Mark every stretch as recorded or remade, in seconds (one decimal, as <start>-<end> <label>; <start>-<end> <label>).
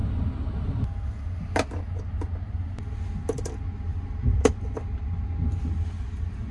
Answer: 0.0-6.5 recorded